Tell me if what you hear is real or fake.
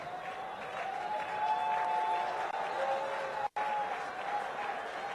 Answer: real